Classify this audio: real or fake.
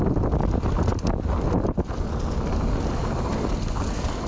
real